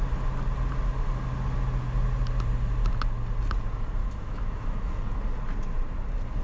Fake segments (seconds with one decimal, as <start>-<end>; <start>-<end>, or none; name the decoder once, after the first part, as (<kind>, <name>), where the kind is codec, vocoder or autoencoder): 4.0-4.9 (autoencoder, DAC-VAE)